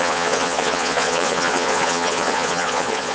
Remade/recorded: remade